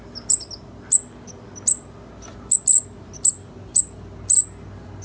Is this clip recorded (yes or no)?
yes